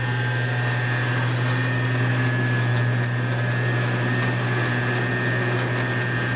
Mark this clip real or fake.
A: real